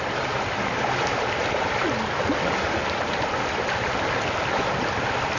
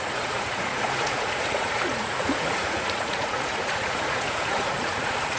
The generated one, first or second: second